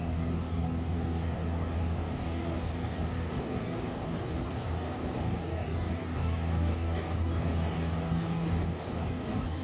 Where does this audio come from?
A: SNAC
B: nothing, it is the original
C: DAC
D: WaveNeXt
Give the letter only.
C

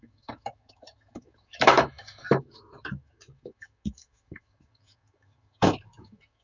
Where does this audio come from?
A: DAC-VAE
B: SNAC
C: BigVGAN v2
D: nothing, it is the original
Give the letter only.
A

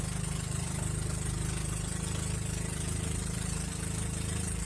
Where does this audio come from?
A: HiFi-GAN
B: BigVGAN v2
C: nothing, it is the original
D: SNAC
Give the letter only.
B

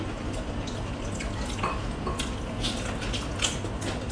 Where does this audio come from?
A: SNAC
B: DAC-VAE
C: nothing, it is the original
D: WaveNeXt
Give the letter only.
C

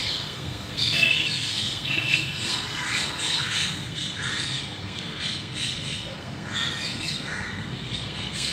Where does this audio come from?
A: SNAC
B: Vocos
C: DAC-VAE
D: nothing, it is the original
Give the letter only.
A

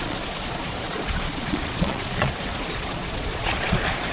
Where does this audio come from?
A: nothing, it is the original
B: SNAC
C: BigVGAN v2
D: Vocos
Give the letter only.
D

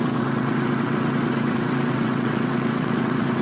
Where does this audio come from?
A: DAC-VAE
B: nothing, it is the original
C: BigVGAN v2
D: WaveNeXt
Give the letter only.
D